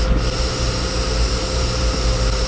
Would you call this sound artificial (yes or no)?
no